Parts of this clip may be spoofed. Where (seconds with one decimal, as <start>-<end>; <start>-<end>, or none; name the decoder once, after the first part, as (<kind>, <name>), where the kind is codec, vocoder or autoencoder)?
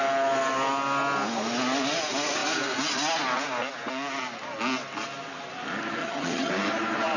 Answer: 6.0-6.5 (vocoder, HiFi-GAN)